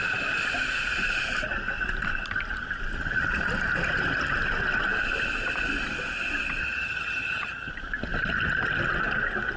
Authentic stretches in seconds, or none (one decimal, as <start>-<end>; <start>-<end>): 0.0-6.6; 7.7-9.6